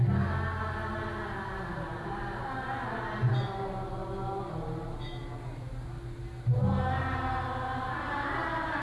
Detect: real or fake real